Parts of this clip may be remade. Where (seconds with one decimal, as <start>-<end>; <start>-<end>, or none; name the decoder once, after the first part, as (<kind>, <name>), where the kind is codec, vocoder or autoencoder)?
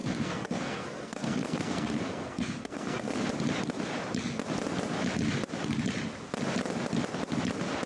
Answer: 0.0-3.2 (codec, SNAC)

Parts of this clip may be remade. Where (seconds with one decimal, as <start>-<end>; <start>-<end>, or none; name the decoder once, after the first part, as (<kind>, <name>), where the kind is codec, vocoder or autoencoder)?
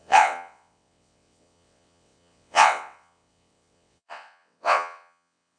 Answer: 0.0-5.6 (vocoder, WaveNeXt)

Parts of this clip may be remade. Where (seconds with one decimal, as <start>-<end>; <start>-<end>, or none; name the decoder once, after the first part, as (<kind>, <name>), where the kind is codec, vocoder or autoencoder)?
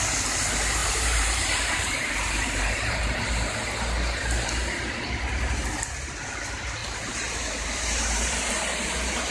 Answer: 0.8-3.3 (vocoder, BigVGAN v2); 6.8-8.5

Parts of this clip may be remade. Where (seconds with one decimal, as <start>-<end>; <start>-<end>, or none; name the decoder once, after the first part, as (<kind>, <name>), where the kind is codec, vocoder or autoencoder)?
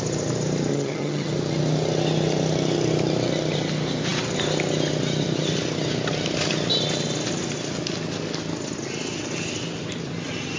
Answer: 0.7-1.3 (vocoder, HiFi-GAN)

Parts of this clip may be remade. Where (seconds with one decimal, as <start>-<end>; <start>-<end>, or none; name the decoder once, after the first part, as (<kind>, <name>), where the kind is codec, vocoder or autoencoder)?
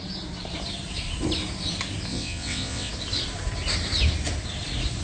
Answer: 2.1-2.9 (vocoder, WaveNeXt)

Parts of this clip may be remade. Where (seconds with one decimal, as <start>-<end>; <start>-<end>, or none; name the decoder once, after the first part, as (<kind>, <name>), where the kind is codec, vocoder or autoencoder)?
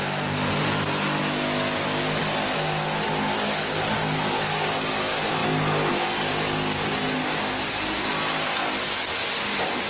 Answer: none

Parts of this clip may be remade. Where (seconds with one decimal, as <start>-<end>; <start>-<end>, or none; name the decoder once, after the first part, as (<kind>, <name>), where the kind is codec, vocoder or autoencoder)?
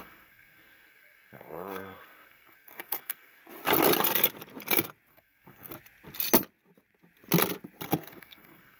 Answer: 0.0-3.4 (codec, SNAC); 5.1-5.7; 8.0-8.8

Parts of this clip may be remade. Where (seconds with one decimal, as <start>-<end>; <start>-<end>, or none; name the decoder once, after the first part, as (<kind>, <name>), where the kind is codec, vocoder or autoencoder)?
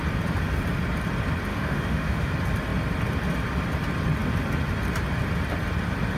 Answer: 1.5-2.3 (autoencoder, DAC-VAE)